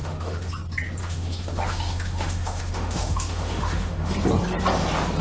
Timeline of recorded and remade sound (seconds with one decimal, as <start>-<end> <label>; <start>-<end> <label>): 0.0-0.5 remade; 0.5-1.0 recorded; 1.0-4.1 remade; 4.1-5.2 recorded